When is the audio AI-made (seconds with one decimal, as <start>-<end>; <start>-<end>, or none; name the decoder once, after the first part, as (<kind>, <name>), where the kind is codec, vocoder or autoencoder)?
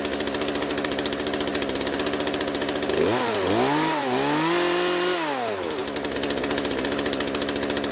none